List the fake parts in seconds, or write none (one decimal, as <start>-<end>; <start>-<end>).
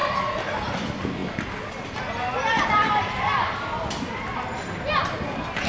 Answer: none